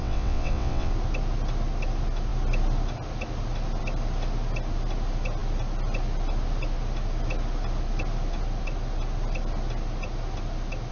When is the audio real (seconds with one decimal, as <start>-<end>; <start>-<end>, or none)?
0.9-10.9